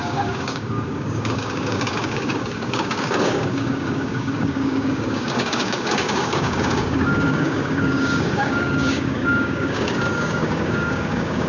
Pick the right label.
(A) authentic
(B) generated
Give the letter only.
B